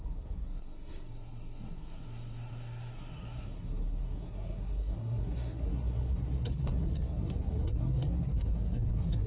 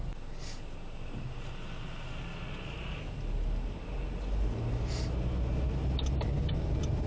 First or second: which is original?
second